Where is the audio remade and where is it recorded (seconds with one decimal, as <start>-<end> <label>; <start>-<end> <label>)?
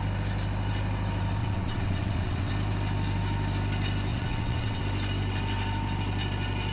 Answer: 0.0-1.4 recorded; 1.4-2.5 remade; 2.5-4.1 recorded; 4.1-4.8 remade; 4.8-6.7 recorded